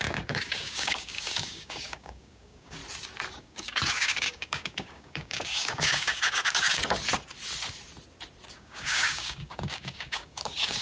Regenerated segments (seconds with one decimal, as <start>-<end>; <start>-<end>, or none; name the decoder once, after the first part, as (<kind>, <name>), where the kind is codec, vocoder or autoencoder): 0.0-2.8 (codec, DAC); 3.4-6.8; 8.5-10.8